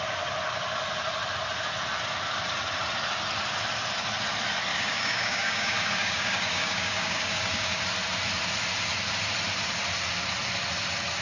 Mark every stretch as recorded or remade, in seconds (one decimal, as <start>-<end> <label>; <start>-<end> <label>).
0.0-4.7 recorded; 4.7-7.8 remade; 7.8-11.2 recorded